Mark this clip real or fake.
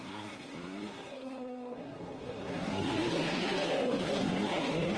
fake